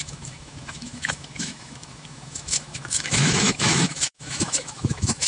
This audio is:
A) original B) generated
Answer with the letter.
B